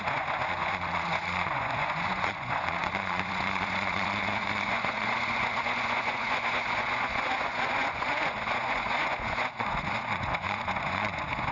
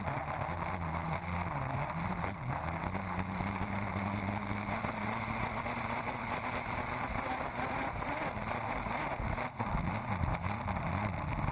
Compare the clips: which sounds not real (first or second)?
first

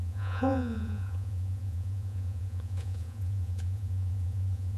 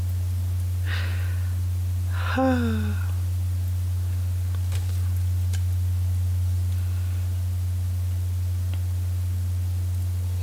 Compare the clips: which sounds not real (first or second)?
first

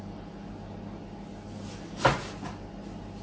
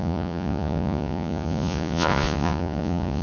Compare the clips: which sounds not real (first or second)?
second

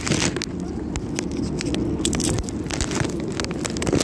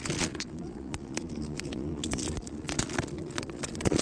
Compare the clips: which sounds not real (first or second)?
second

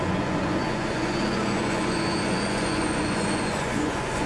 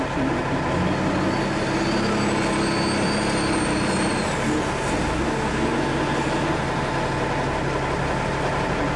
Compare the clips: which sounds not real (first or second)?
first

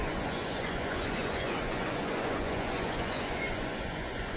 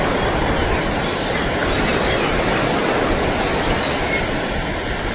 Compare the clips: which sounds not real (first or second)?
first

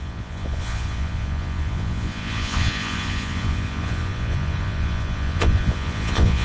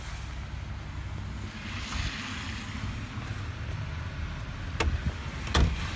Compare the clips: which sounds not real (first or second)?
first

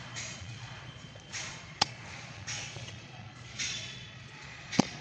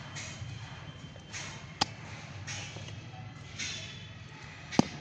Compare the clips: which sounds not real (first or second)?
first